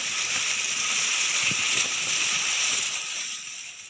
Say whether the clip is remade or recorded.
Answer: recorded